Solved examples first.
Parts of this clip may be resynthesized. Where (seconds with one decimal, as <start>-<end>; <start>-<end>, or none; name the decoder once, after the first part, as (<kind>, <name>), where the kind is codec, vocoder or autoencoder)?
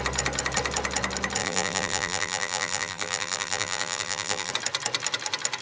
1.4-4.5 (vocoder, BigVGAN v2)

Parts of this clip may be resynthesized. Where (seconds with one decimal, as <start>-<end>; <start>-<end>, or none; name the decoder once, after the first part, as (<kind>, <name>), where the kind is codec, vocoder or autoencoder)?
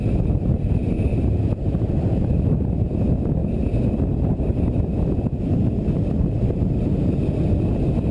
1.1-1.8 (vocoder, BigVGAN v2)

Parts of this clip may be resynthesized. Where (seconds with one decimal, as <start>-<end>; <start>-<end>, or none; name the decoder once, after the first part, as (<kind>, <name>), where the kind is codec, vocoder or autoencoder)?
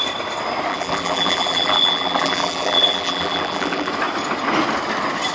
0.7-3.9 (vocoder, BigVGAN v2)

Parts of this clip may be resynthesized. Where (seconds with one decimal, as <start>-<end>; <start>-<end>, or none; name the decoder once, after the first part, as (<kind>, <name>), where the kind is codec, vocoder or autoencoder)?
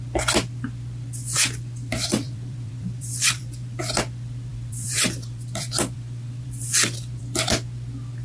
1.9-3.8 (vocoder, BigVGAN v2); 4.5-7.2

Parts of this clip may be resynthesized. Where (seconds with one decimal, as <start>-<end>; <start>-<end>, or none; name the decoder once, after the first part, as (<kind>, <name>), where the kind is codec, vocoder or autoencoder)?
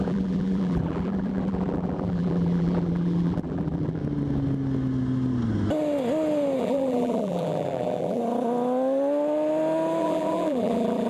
0.0-4.0 (vocoder, BigVGAN v2); 6.6-8.2; 10.0-11.1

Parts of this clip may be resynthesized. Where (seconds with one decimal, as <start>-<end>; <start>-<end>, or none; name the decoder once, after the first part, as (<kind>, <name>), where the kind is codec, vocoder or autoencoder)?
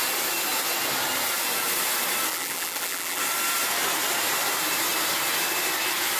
2.3-3.2 (vocoder, BigVGAN v2)